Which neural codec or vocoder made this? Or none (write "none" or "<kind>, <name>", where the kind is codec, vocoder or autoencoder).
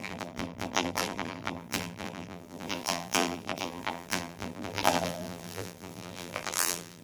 vocoder, BigVGAN v2